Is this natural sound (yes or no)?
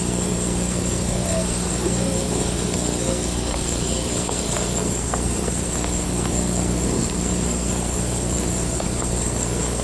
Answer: no